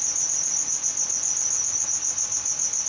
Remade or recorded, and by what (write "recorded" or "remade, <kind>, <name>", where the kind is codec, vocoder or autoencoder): recorded